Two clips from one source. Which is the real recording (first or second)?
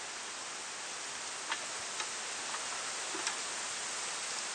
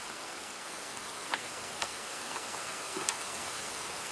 first